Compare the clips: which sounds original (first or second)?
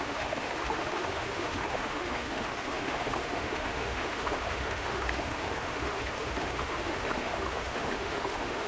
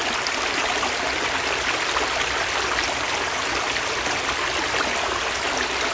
second